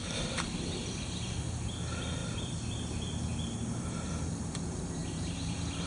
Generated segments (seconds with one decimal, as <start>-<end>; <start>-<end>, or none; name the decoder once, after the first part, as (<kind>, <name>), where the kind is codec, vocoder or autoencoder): 2.2-2.9 (vocoder, BigVGAN v2); 3.3-3.9; 5.0-5.9